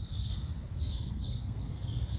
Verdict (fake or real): fake